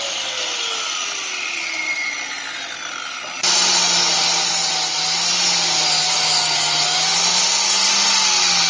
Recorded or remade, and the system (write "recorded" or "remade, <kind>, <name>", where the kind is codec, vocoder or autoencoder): recorded